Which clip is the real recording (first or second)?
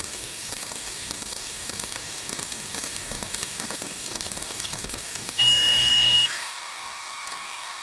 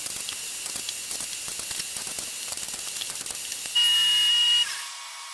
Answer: second